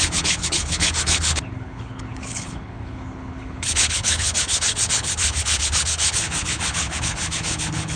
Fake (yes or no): yes